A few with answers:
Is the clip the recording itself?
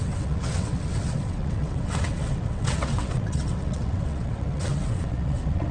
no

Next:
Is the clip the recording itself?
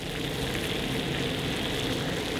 yes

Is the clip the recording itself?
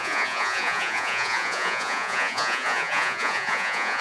no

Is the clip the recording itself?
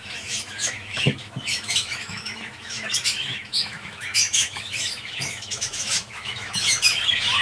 no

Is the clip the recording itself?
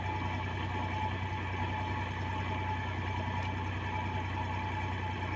yes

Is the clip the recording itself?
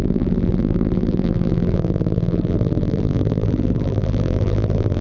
no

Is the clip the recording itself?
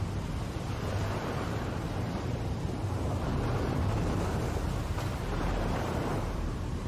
no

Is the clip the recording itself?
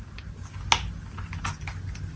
yes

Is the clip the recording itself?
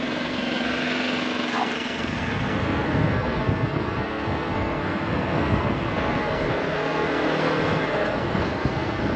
no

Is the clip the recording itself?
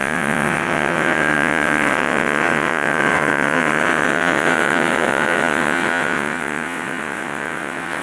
no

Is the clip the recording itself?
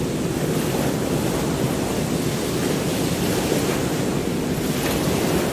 yes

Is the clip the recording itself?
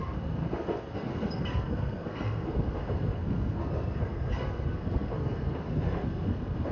no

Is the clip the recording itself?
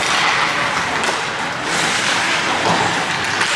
yes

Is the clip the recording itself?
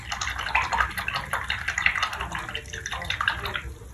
yes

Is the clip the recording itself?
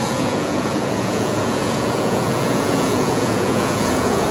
no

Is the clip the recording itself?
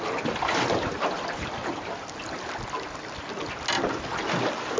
yes